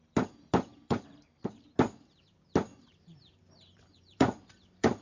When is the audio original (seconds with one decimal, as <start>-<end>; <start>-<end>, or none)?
0.0-0.7; 1.7-2.7